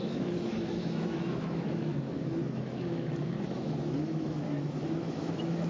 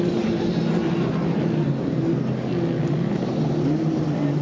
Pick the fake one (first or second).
first